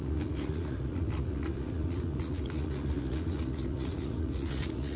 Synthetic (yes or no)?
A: yes